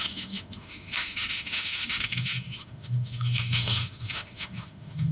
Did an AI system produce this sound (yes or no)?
yes